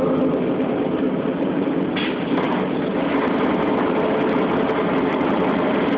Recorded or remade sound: recorded